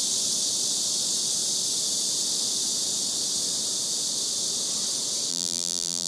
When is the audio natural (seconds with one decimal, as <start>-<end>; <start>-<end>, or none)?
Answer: 0.0-5.3